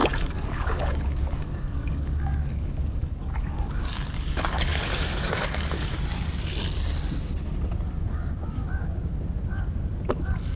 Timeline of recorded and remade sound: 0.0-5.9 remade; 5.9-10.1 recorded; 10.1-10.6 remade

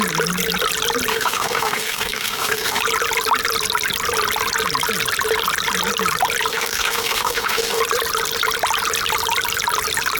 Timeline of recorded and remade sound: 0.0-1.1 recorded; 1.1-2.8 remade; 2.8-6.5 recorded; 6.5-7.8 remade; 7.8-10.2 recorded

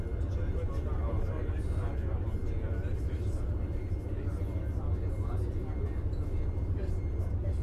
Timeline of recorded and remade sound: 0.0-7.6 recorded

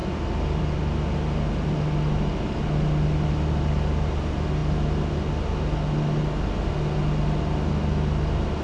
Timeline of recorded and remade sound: 0.0-8.6 recorded